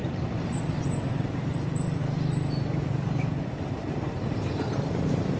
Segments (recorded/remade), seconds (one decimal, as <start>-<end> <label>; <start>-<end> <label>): 0.0-5.4 remade